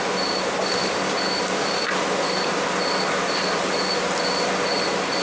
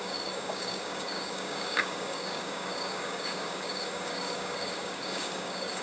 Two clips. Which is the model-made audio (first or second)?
second